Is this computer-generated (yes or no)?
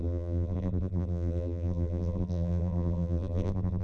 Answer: yes